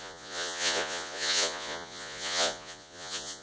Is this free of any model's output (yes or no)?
no